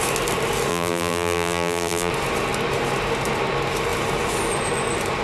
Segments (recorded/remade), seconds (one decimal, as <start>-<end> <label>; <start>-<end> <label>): 0.0-0.7 recorded; 0.7-2.1 remade; 2.1-5.2 recorded